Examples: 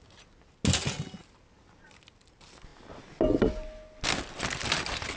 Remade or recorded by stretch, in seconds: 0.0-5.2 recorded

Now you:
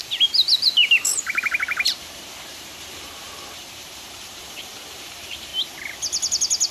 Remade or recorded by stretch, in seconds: 0.0-5.5 remade; 5.5-6.7 recorded